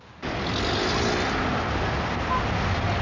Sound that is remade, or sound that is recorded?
recorded